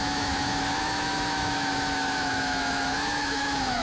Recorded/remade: remade